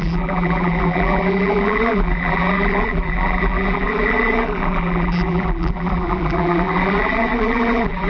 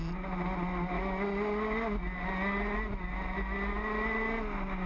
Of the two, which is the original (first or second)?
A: second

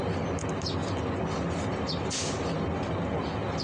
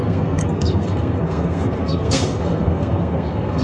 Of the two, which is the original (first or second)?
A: first